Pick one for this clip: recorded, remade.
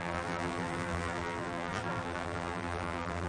remade